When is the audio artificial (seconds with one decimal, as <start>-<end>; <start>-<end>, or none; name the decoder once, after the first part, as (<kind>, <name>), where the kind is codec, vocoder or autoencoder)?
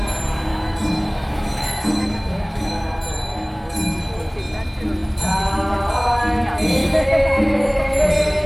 0.5-4.0 (autoencoder, DAC-VAE); 6.8-7.8